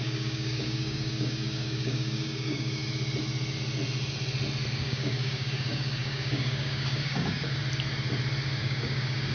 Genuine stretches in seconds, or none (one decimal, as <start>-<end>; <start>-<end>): 2.8-4.7; 7.6-8.6